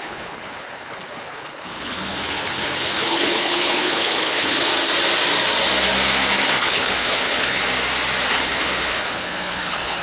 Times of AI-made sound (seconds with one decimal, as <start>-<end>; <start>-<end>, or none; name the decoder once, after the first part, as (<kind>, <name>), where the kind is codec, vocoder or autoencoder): 0.0-4.7 (codec, HILCodec); 6.6-7.6; 8.3-10.0